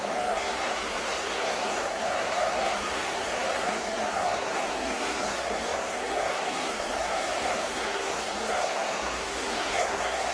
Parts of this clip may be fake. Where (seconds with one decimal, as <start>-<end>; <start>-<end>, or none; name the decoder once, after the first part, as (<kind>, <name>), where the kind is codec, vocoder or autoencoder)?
0.0-10.3 (codec, SNAC)